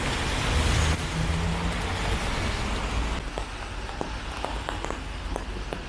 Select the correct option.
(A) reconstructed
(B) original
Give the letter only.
B